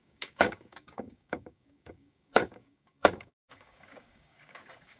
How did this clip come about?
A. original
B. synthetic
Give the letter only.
B